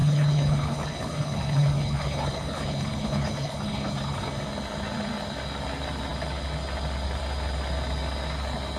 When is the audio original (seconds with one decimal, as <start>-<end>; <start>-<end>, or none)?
4.3-8.8